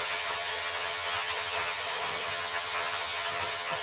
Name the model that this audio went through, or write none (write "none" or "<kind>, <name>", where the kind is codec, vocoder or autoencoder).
vocoder, HiFi-GAN